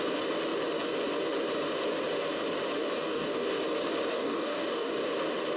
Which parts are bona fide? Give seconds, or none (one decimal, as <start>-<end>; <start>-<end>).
0.0-2.8; 3.6-4.1; 4.9-5.6